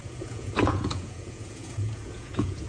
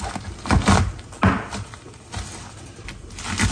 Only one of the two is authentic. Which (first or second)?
second